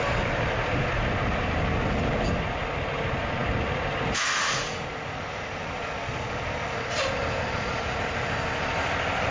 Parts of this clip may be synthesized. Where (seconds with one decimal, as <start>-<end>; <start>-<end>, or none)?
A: none